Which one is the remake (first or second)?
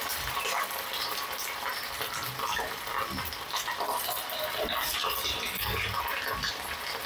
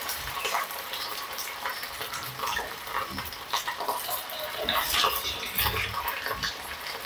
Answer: second